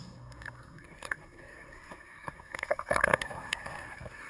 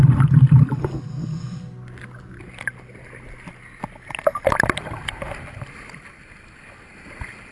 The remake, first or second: first